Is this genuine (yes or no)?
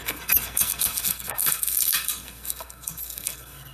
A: no